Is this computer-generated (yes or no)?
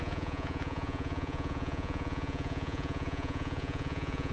yes